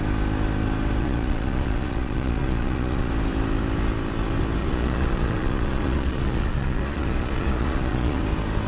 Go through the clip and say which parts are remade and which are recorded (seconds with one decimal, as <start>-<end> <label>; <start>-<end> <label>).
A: 0.0-1.0 recorded; 1.0-3.1 remade; 3.1-4.6 recorded; 4.6-8.2 remade; 8.2-8.7 recorded